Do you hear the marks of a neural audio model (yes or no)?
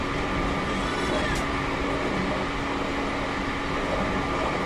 no